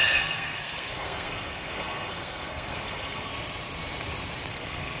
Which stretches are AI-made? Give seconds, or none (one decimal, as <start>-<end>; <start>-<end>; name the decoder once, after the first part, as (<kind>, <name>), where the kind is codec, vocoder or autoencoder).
0.0-3.3 (codec, SNAC); 4.5-5.0